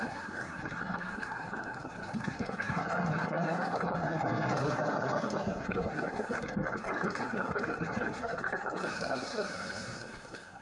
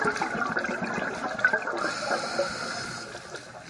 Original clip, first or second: second